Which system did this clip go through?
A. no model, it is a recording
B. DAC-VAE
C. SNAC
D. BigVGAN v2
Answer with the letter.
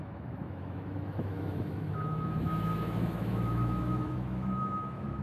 B